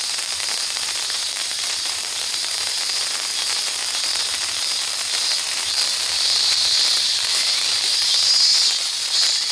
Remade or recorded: remade